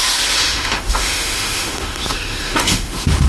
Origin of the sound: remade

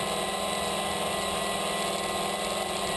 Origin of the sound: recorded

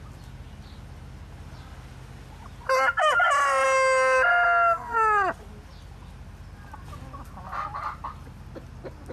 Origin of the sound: recorded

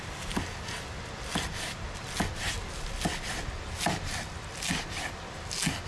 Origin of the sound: recorded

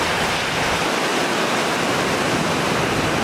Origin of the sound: recorded